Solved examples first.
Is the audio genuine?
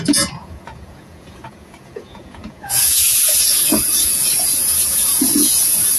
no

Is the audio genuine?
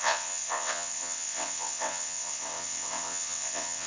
no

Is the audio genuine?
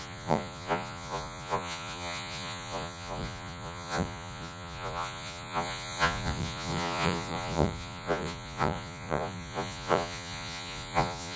no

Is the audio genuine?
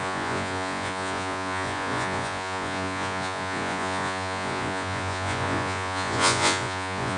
no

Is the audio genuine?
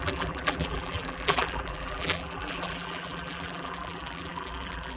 no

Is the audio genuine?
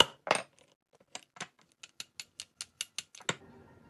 yes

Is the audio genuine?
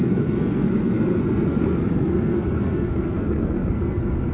no